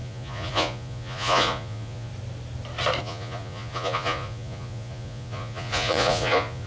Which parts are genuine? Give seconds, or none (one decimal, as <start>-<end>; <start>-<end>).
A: 2.1-3.0